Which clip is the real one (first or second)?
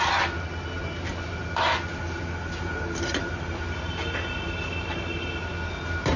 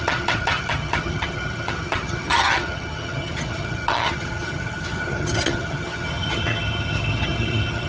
first